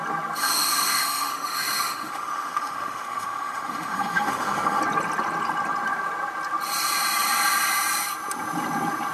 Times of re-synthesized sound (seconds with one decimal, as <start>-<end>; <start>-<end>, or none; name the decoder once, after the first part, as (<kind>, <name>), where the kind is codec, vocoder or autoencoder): 0.4-4.8 (autoencoder, DAC-VAE)